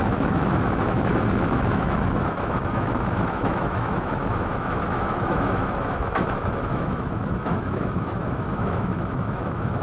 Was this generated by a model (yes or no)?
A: yes